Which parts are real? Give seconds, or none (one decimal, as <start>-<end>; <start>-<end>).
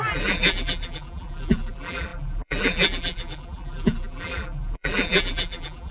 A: none